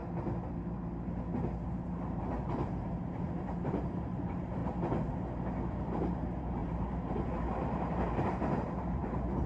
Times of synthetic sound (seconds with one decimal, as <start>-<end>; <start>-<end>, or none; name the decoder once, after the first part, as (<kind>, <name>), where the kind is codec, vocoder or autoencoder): 1.7-4.6 (vocoder, BigVGAN v2); 5.8-9.5